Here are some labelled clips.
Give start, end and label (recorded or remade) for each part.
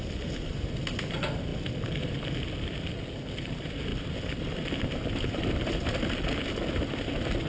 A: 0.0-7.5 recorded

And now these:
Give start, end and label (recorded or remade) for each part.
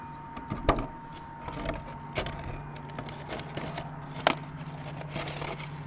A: 0.0-5.9 recorded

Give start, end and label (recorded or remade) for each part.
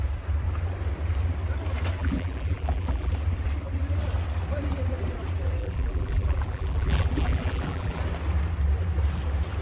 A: 0.0-2.0 recorded; 2.0-3.1 remade; 3.1-5.6 recorded; 5.6-8.0 remade; 8.0-9.6 recorded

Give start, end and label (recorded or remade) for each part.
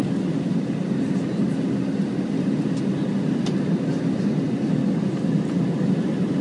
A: 0.0-6.4 recorded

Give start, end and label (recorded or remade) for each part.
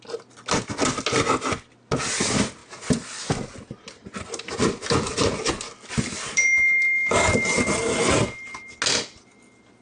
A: 0.0-7.0 recorded; 7.0-8.0 remade; 8.0-9.8 recorded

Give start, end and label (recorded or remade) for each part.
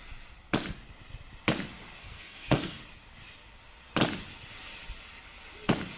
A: 0.0-2.0 recorded; 2.0-2.8 remade; 2.8-6.0 recorded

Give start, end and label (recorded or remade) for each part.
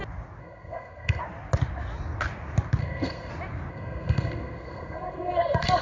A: 0.0-0.4 recorded; 0.4-1.2 remade; 1.2-2.8 recorded; 2.8-3.3 remade; 3.3-3.7 recorded; 3.7-5.8 remade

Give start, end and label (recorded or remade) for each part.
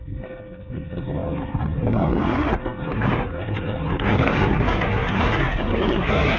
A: 0.0-6.4 remade